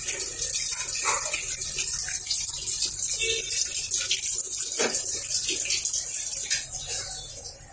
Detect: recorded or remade recorded